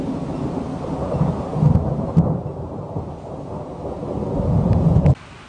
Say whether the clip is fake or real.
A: real